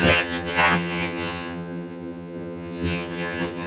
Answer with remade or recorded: remade